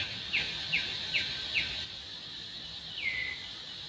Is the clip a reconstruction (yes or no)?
no